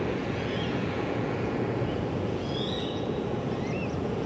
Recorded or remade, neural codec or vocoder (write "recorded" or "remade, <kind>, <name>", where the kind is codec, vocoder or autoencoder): remade, vocoder, Vocos